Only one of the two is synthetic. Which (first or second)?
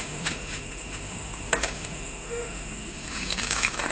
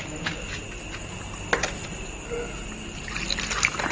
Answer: first